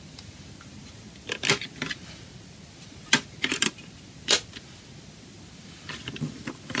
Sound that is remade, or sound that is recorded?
recorded